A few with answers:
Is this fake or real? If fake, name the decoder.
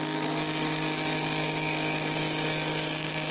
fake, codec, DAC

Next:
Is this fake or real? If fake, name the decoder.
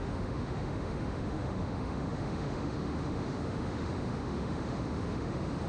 fake, autoencoder, DAC-VAE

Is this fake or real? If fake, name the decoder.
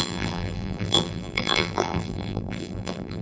fake, vocoder, BigVGAN v2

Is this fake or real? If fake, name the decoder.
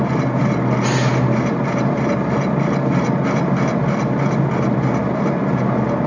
real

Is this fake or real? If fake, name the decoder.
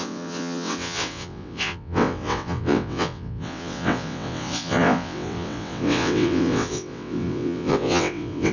fake, vocoder, WaveNeXt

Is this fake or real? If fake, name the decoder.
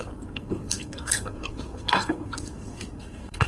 fake, codec, SNAC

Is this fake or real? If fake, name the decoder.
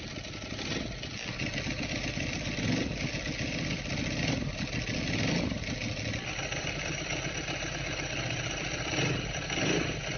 real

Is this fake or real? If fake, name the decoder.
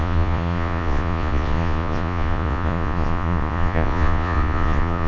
fake, vocoder, Vocos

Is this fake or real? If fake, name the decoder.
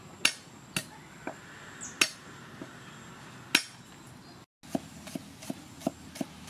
real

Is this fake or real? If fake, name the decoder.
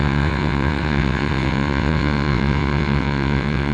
fake, vocoder, WaveNeXt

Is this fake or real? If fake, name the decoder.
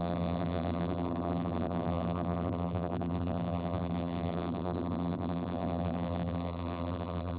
fake, vocoder, BigVGAN v2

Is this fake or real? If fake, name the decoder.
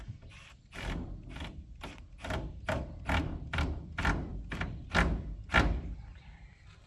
fake, vocoder, BigVGAN v2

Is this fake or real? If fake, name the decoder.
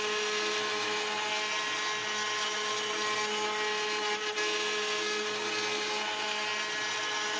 real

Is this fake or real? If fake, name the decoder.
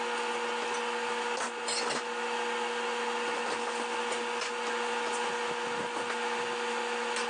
real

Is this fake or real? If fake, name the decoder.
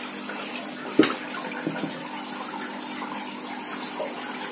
real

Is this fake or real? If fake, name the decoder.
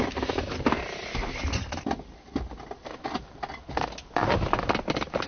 real